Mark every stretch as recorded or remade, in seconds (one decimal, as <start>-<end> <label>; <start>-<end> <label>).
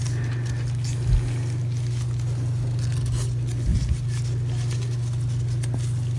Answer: 0.0-6.2 recorded